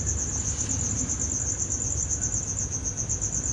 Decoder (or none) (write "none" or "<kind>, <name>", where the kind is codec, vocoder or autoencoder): none